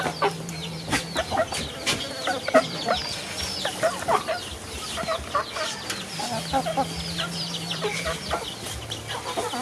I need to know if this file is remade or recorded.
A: recorded